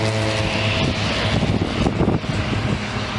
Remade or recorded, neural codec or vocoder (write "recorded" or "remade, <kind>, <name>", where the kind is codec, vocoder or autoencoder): recorded